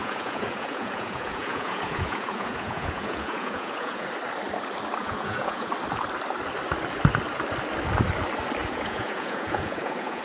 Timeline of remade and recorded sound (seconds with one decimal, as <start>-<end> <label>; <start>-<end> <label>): 0.0-4.1 remade; 4.1-5.0 recorded; 5.0-5.7 remade; 5.7-8.6 recorded; 8.6-10.2 remade